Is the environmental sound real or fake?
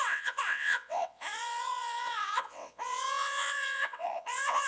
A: fake